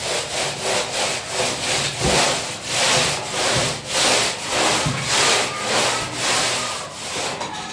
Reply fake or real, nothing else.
real